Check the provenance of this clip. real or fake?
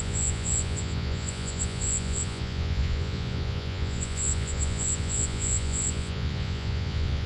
fake